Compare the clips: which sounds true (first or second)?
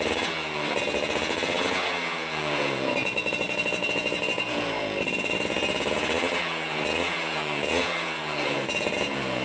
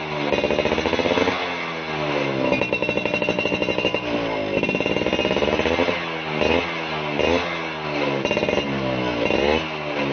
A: second